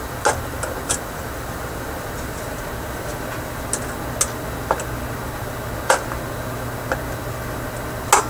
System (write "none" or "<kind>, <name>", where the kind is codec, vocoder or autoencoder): none